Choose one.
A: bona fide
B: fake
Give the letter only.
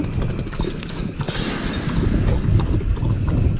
A